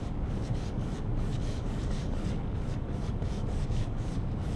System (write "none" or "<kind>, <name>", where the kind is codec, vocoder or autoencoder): codec, DAC